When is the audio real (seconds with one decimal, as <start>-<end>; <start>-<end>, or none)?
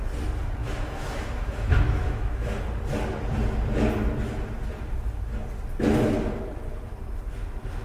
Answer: 0.0-0.6; 2.6-7.8